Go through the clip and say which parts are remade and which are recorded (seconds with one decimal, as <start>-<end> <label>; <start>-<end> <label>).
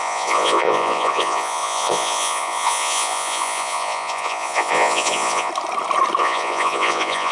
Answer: 0.0-5.5 remade; 5.5-6.2 recorded; 6.2-7.3 remade